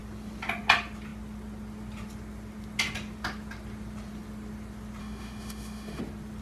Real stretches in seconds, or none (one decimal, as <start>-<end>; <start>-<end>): 0.0-5.0; 6.0-6.4